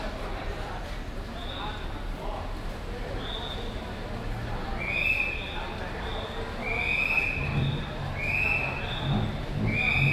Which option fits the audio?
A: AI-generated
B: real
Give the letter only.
B